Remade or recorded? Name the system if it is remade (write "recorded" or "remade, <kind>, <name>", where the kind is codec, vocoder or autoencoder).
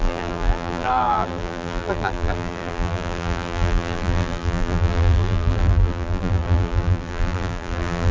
remade, vocoder, BigVGAN v2